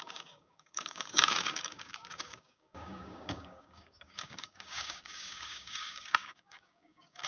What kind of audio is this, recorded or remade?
remade